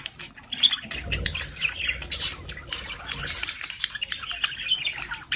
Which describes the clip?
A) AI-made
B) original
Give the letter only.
B